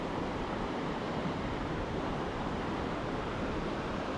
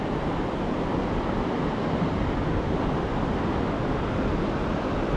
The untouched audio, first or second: second